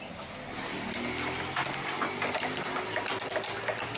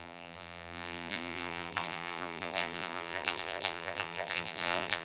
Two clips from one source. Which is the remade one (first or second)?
second